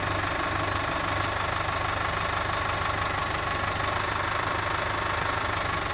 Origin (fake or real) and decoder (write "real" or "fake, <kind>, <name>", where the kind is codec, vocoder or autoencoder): real